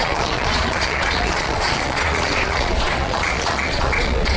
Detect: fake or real fake